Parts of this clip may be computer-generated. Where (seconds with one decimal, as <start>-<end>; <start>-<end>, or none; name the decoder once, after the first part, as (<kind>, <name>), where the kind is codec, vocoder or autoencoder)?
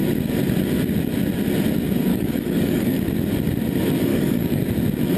2.1-3.0 (codec, DAC); 4.1-4.6